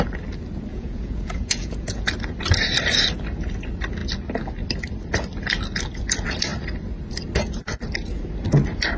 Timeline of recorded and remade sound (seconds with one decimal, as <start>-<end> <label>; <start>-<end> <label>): 0.0-0.7 recorded; 0.7-2.1 remade; 2.1-9.0 recorded